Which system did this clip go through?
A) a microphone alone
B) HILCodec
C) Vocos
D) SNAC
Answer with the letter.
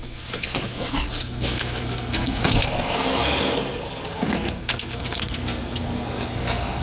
D